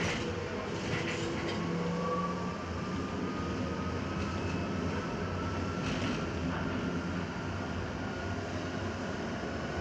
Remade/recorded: recorded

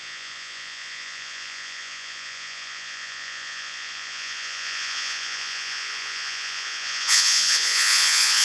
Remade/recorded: remade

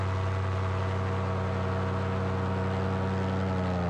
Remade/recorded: recorded